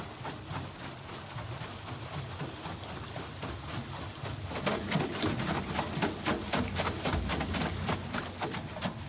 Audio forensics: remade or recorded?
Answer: recorded